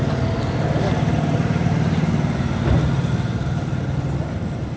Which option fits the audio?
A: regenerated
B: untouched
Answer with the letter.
B